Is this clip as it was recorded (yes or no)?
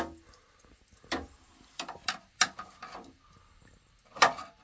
yes